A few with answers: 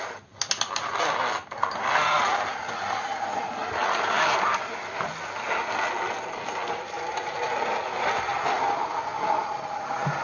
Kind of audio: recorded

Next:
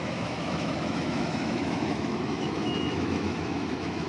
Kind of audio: remade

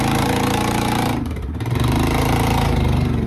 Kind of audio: remade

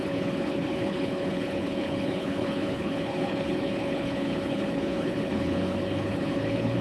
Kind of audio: remade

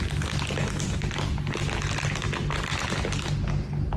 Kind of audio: recorded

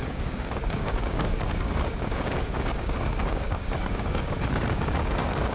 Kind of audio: remade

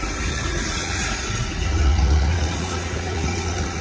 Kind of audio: remade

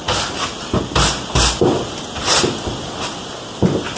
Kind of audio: recorded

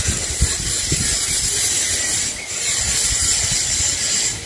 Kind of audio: recorded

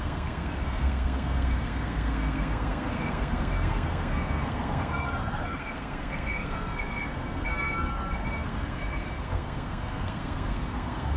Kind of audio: remade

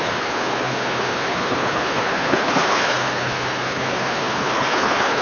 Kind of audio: remade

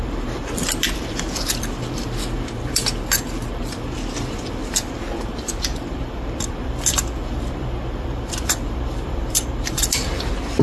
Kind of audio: remade